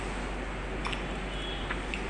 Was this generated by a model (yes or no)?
no